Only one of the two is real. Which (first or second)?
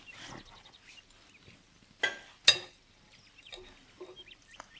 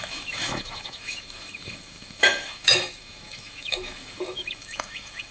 first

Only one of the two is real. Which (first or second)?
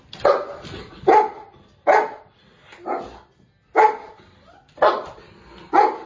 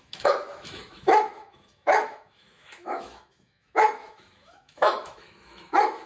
first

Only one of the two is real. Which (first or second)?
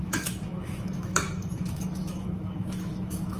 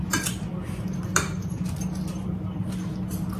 second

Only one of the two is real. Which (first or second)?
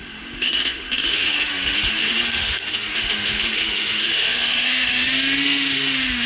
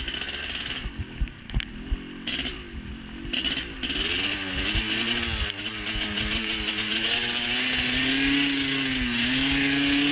second